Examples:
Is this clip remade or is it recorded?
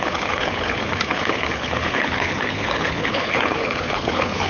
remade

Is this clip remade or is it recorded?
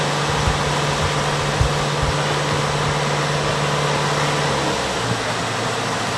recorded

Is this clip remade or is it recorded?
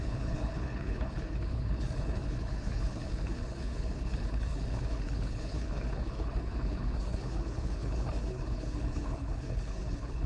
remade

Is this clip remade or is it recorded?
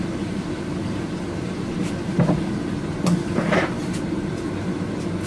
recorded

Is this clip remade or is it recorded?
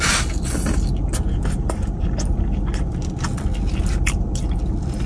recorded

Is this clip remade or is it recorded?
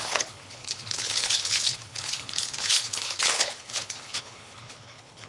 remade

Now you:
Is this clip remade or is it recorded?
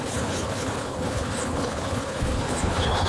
remade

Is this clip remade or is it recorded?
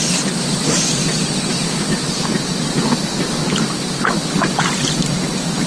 recorded